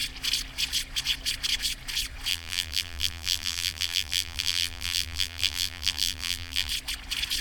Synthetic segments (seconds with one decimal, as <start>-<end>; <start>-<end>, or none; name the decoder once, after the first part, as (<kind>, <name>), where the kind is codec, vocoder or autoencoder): 2.3-6.7 (vocoder, BigVGAN v2)